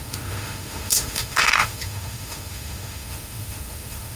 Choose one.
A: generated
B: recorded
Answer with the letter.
A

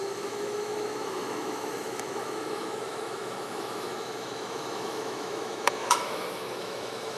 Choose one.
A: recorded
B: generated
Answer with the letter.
B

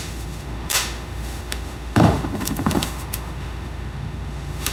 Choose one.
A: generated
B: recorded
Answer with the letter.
A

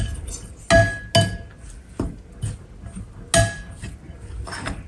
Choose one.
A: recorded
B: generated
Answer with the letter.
A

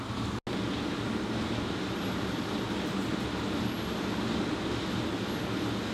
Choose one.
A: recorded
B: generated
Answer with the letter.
A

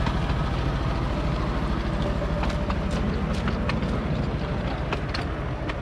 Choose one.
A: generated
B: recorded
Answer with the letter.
B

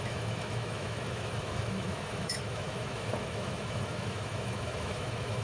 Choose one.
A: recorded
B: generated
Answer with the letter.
B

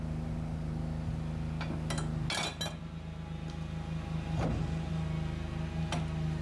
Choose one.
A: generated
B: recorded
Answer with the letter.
B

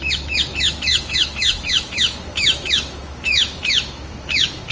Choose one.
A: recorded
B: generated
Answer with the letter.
B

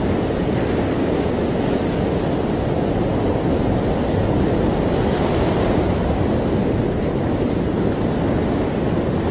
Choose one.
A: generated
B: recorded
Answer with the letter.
B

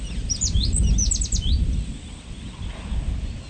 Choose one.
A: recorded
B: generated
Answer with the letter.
A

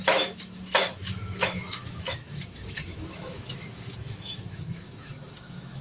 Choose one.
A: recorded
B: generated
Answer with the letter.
B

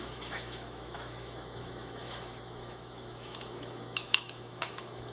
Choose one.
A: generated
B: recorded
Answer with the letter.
A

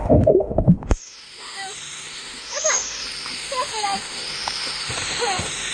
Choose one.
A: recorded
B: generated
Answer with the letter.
B